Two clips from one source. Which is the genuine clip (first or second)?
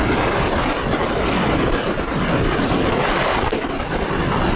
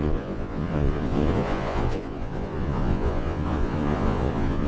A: first